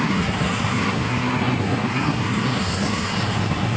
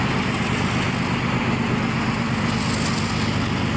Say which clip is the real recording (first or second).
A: second